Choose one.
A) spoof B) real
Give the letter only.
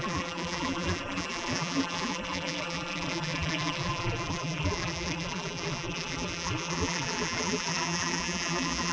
A